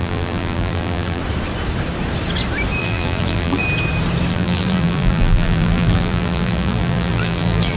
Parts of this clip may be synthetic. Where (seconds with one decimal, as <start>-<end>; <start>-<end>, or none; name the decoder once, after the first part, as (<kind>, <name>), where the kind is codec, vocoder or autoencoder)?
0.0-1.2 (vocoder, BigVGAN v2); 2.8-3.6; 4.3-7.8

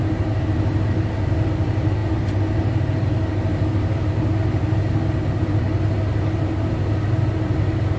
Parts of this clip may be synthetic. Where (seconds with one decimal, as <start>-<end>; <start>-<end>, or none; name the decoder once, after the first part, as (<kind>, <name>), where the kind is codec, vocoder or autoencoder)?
none

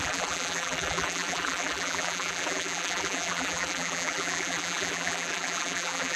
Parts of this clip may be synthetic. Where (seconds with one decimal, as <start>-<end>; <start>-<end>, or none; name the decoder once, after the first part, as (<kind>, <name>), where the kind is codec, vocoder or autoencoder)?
0.0-6.2 (vocoder, BigVGAN v2)

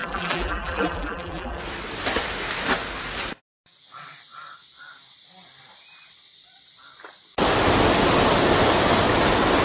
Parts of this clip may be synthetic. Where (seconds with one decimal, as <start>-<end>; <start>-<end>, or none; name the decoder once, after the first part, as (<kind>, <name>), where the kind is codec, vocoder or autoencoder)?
0.0-1.6 (vocoder, BigVGAN v2)

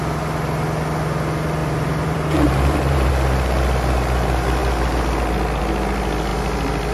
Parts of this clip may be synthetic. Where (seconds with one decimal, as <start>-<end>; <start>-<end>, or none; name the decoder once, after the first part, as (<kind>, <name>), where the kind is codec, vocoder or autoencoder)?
1.6-3.1 (vocoder, BigVGAN v2)